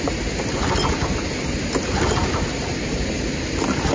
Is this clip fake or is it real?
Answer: real